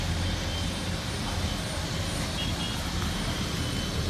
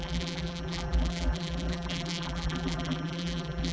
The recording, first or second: first